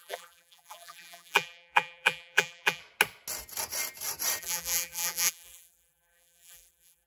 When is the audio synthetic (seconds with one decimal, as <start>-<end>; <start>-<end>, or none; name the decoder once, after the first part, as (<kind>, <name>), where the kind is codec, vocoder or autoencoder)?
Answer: 0.0-2.8 (vocoder, BigVGAN v2); 4.4-7.1